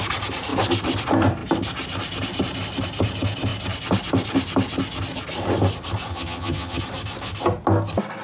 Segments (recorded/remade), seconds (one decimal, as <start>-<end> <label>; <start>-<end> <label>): 0.0-6.1 recorded; 6.1-6.8 remade; 6.8-8.2 recorded